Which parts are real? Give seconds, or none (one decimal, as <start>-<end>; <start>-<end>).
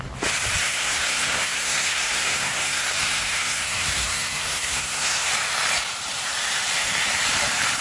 0.0-0.6; 5.3-7.8